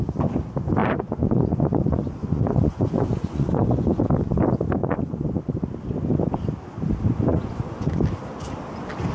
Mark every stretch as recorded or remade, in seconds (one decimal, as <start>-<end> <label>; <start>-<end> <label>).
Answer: 0.0-0.8 recorded; 0.8-4.0 remade; 4.0-4.8 recorded; 4.8-5.4 remade; 5.4-7.3 recorded; 7.3-8.0 remade; 8.0-9.1 recorded